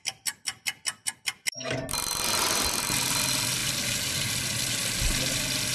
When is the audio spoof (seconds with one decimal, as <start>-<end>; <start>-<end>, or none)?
none